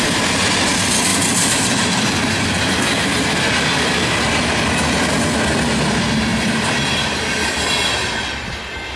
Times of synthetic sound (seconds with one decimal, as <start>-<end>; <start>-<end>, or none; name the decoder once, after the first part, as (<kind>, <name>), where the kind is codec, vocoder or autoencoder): 1.1-2.1 (vocoder, BigVGAN v2); 6.3-8.2